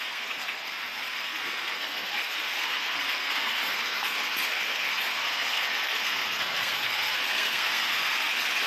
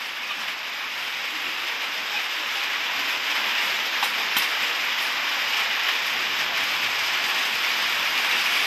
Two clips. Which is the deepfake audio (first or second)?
first